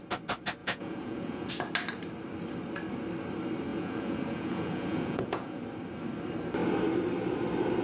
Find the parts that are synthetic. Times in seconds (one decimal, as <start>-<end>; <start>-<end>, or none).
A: 0.6-1.5; 3.7-5.6